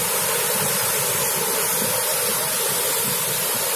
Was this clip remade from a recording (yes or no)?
no